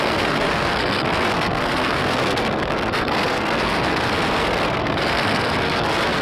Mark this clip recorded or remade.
remade